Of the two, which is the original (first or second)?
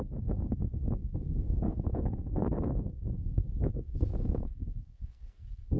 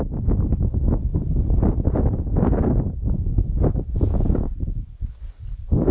second